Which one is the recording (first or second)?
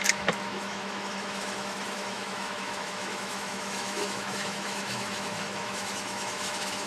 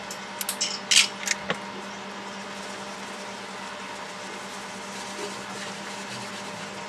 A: second